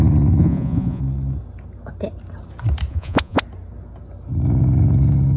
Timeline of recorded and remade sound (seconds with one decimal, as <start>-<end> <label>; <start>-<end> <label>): 0.0-0.4 recorded; 0.4-1.0 remade; 1.0-2.9 recorded; 2.9-3.4 remade; 3.4-5.4 recorded